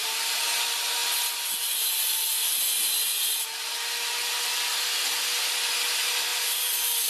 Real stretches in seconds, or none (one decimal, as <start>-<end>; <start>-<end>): 0.0-7.1